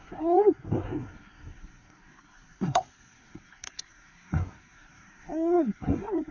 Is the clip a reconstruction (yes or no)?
yes